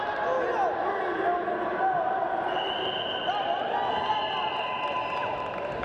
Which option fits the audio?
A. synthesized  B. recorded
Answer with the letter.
B